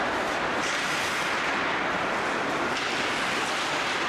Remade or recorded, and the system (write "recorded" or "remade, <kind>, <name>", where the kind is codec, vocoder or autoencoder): remade, vocoder, BigVGAN v2